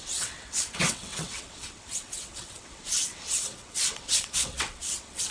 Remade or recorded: remade